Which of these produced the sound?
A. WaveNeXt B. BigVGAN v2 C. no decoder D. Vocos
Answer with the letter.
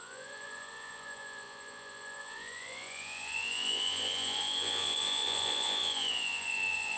D